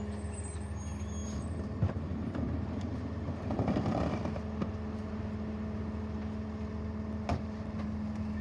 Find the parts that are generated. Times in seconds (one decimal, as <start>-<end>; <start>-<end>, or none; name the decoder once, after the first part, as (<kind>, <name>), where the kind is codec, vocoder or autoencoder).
1.2-4.0 (vocoder, BigVGAN v2)